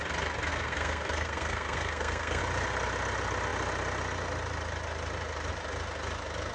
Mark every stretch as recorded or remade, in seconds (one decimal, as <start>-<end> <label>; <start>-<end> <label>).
0.0-0.5 recorded; 0.5-2.4 remade; 2.4-6.5 recorded